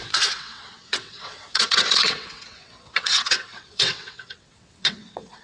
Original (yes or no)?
no